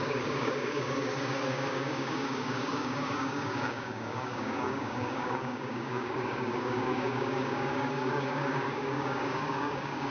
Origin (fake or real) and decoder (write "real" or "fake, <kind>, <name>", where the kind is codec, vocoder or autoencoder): fake, codec, DAC